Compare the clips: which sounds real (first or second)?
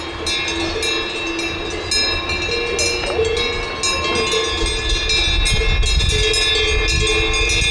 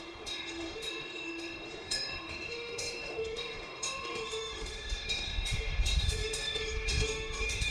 first